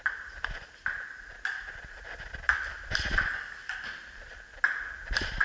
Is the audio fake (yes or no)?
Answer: no